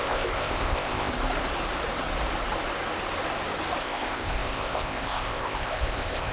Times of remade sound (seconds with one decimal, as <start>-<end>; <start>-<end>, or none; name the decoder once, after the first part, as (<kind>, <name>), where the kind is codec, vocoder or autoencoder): 0.0-1.1 (codec, ZipCodec); 3.8-6.3